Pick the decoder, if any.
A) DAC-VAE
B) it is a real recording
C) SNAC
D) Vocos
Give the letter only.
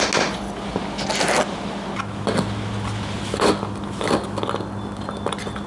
B